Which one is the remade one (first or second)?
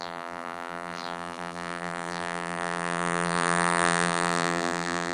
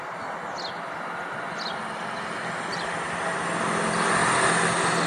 first